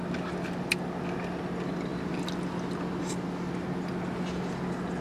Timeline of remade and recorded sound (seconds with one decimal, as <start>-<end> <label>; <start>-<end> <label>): 0.0-5.0 recorded